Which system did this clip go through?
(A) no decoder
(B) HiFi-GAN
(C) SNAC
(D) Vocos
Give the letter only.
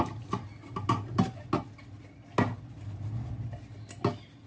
A